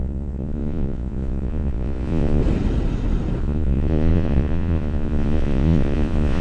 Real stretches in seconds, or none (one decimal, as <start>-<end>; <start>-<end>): 2.4-3.4